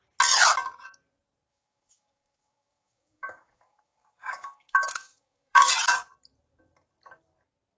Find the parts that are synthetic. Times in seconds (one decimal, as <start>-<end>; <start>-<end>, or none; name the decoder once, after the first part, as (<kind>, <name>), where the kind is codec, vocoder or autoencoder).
1.5-5.7 (codec, DAC)